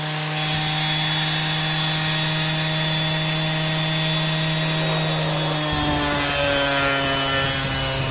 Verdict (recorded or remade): recorded